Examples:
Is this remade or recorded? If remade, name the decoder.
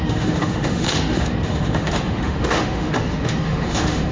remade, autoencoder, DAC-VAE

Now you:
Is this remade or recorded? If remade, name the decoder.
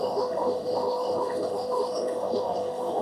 remade, autoencoder, DAC-VAE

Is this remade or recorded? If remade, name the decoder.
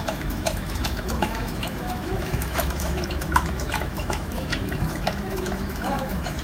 remade, autoencoder, DAC-VAE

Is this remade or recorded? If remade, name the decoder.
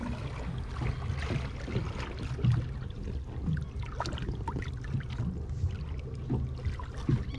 recorded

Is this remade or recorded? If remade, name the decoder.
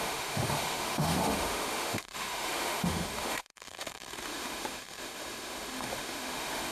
remade, autoencoder, DAC-VAE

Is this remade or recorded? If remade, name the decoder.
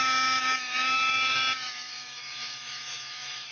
remade, autoencoder, DAC-VAE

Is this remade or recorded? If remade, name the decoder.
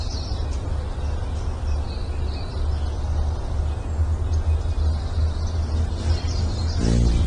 recorded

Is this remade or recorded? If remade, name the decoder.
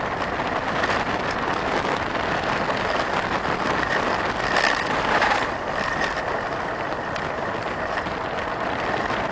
recorded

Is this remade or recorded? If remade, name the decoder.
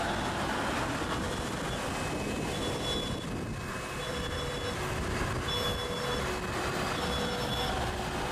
recorded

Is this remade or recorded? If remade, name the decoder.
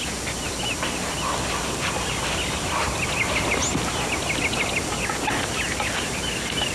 recorded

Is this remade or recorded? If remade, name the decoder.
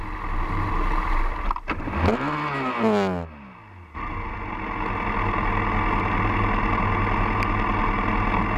recorded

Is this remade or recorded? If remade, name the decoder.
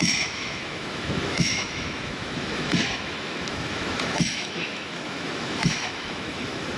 remade, autoencoder, DAC-VAE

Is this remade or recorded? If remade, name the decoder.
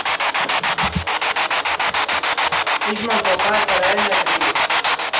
recorded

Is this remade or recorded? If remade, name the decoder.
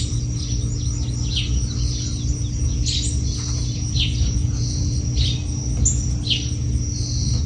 recorded